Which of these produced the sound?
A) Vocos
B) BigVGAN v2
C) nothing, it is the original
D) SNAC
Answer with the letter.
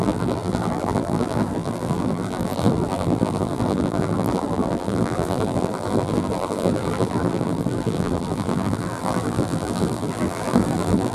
B